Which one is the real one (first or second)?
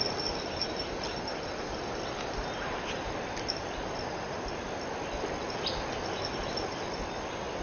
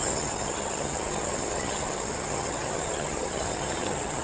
first